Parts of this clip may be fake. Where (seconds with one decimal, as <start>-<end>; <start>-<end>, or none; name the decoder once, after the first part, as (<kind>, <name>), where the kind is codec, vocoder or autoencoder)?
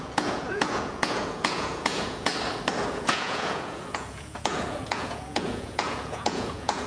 0.0-2.3 (vocoder, Vocos); 2.9-6.9